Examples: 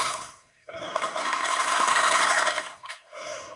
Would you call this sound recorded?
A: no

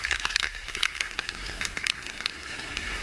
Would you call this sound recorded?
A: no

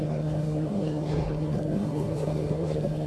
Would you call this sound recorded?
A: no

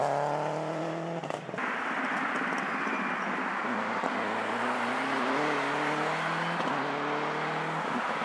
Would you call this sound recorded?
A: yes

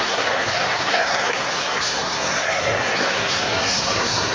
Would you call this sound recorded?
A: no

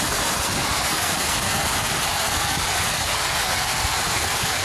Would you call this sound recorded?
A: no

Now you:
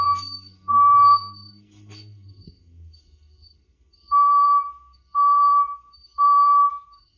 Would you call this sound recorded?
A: no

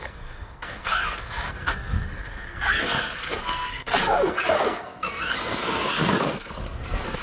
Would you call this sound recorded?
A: no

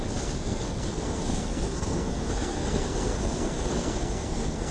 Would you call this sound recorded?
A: no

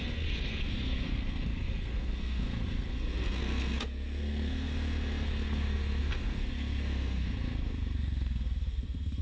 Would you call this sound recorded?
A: no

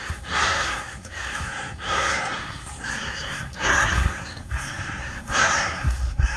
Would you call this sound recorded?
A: no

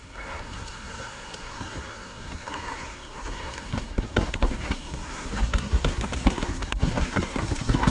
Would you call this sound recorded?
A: no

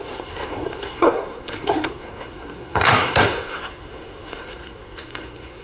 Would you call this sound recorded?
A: no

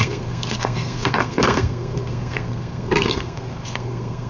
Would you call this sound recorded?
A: no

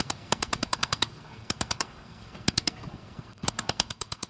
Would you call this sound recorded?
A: no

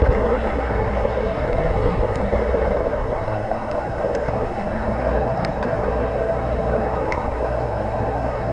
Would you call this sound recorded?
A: no